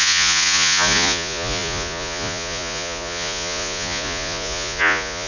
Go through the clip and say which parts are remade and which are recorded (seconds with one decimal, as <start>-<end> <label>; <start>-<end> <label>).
0.0-5.3 remade